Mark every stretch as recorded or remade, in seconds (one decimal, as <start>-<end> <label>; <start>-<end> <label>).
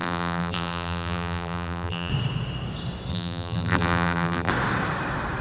0.0-2.1 remade; 2.1-3.1 recorded; 3.1-4.5 remade; 4.5-5.4 recorded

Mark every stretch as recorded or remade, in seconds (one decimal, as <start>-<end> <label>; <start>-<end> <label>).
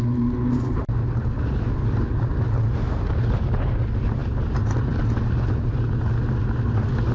0.0-7.1 recorded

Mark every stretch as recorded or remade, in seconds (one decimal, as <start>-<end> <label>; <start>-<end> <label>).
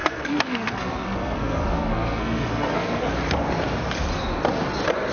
0.0-3.1 remade; 3.1-5.1 recorded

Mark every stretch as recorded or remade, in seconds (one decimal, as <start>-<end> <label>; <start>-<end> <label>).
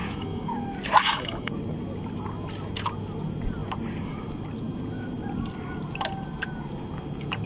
0.0-0.5 remade; 0.5-1.0 recorded; 1.0-1.5 remade; 1.5-7.5 recorded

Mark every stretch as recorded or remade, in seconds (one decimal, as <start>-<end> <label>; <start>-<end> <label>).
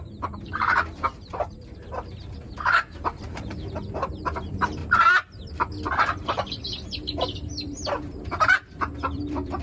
0.0-4.8 remade; 4.8-5.9 recorded; 5.9-9.6 remade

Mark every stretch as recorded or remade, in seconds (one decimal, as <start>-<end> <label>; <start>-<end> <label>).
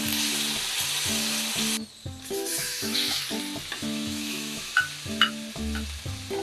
0.0-2.5 recorded; 2.5-3.2 remade; 3.2-3.8 recorded; 3.8-4.7 remade; 4.7-6.4 recorded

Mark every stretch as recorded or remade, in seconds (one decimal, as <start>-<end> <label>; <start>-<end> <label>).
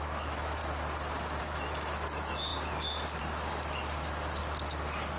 0.0-0.6 remade; 0.6-1.4 recorded; 1.4-2.5 remade; 2.5-3.2 recorded; 3.2-4.4 remade; 4.4-5.2 recorded